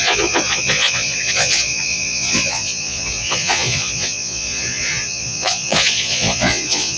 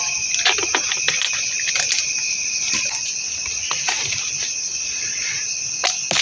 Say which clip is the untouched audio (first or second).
second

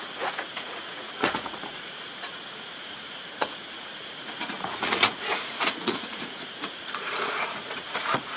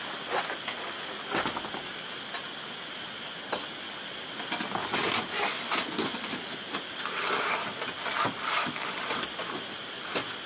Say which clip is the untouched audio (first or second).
second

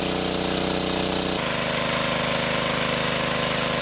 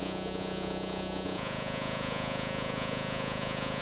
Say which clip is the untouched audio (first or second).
first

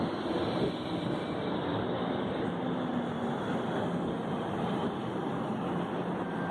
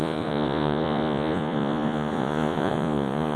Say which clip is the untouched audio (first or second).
first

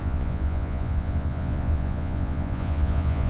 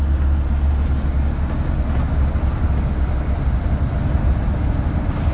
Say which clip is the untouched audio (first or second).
second